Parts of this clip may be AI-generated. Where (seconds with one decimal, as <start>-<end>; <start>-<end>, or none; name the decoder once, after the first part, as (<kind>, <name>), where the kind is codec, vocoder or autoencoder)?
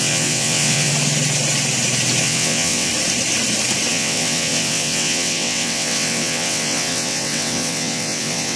0.0-0.9 (vocoder, WaveNeXt); 2.2-2.9; 3.9-8.6